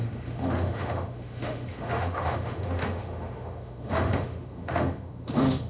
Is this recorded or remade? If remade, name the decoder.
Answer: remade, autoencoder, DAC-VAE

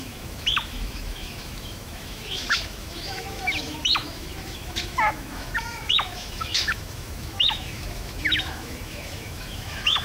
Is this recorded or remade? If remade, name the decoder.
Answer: remade, autoencoder, DAC-VAE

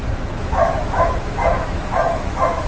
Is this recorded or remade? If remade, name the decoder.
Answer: remade, autoencoder, DAC-VAE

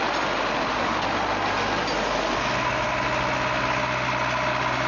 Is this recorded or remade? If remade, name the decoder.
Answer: recorded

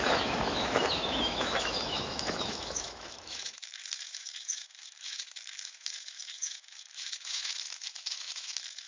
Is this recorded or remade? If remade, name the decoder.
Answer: remade, autoencoder, DAC-VAE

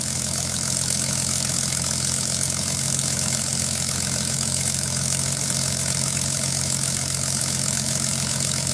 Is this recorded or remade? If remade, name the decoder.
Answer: remade, autoencoder, DAC-VAE